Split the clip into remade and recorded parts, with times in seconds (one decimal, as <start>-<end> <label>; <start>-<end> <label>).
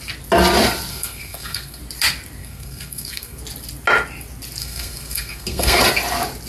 0.0-0.9 recorded; 0.9-1.8 remade; 1.8-2.4 recorded; 2.4-3.4 remade; 3.4-4.6 recorded; 4.6-5.8 remade; 5.8-6.5 recorded